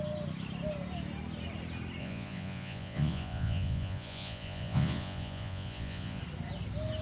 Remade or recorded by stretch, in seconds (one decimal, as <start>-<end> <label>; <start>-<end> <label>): 0.0-2.0 recorded; 2.0-6.2 remade; 6.2-7.0 recorded